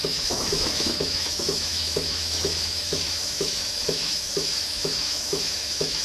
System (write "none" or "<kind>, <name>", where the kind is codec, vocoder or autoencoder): autoencoder, DAC-VAE